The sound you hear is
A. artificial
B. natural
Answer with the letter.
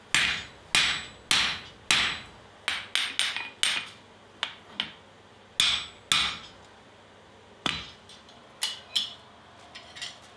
B